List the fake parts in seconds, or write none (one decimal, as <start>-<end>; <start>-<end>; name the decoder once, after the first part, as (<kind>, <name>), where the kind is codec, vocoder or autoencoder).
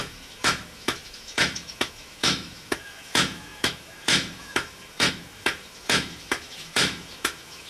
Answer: 0.0-7.7 (autoencoder, DAC-VAE)